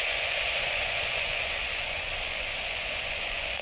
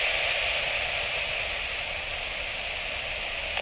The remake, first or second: first